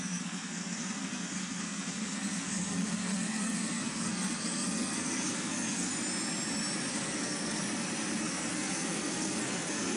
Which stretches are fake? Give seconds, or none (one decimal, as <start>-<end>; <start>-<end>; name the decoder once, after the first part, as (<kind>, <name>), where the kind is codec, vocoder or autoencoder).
0.0-5.9 (codec, SNAC); 6.9-7.6; 8.2-10.0